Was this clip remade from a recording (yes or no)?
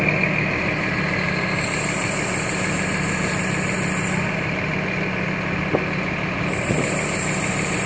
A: no